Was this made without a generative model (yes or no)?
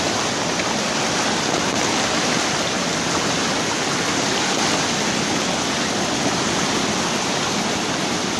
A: yes